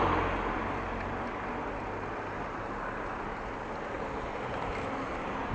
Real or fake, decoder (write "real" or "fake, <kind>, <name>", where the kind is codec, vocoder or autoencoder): real